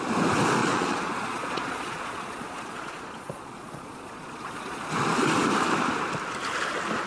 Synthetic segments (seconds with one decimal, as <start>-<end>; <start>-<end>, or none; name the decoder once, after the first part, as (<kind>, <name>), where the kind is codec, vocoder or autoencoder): 0.6-4.9 (vocoder, Vocos)